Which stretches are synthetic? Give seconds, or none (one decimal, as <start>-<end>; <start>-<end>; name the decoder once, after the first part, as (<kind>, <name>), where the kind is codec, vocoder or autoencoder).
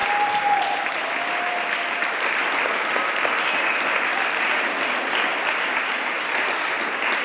none